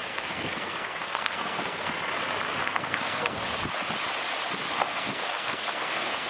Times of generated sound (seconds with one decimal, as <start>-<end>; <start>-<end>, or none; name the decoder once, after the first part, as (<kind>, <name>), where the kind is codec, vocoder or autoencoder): 0.0-1.9 (codec, SNAC); 2.6-3.4; 4.8-6.3